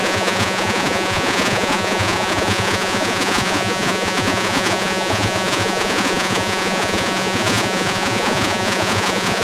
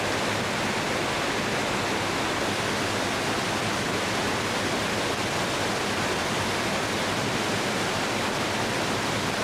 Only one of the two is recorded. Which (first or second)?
second